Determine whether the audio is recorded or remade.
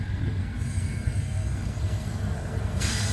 remade